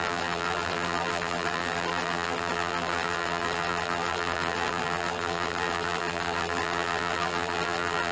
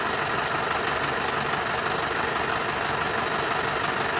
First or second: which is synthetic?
first